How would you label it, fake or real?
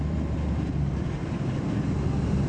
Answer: fake